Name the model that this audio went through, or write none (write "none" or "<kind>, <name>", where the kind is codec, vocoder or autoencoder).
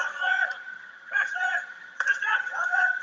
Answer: vocoder, HiFi-GAN